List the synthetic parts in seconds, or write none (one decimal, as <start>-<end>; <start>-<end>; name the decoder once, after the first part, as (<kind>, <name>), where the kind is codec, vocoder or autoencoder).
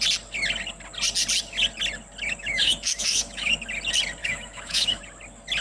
2.4-3.5 (autoencoder, DAC-VAE); 4.2-5.0